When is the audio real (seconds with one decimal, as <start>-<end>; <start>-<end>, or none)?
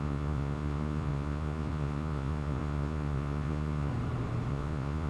3.9-4.5